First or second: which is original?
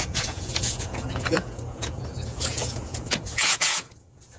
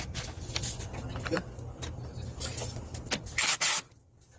second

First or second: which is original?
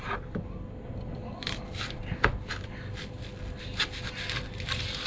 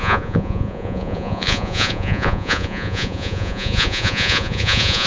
first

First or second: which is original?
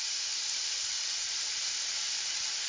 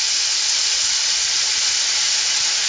first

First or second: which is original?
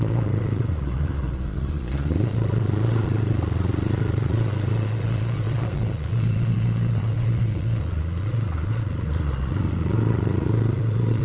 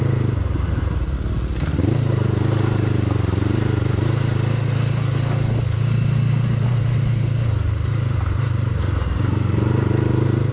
second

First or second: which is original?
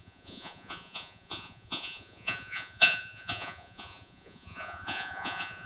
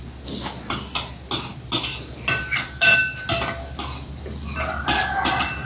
second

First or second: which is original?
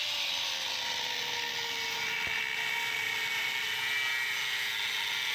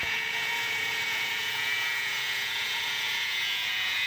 first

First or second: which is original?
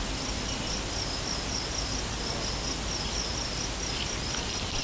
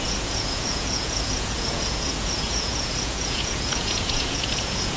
first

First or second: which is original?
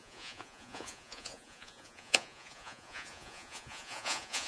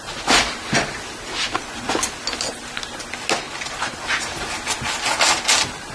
second